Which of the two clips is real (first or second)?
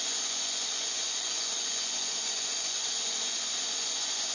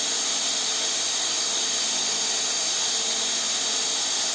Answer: second